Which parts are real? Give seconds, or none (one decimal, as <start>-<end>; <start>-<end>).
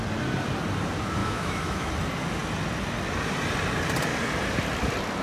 0.0-1.2; 1.9-5.2